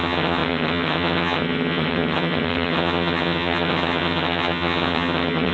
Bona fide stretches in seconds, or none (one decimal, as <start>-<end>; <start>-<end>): none